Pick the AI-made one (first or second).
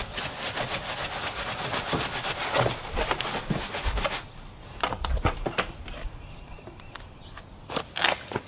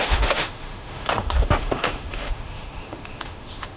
second